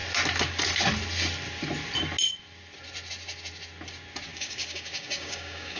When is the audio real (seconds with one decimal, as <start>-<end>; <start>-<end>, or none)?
0.0-4.3

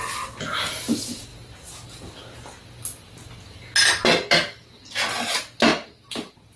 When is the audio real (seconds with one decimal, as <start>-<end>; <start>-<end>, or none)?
0.0-5.7

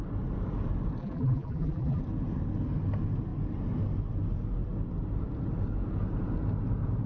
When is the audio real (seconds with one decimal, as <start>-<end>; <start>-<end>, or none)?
0.0-1.0; 2.0-7.1

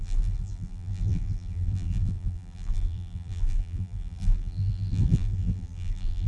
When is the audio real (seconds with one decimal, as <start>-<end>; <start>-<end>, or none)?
none

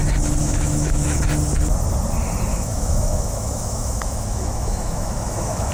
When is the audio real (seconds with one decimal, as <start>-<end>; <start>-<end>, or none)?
0.0-0.4; 1.2-2.5